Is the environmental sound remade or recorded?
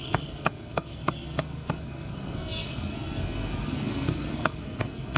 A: remade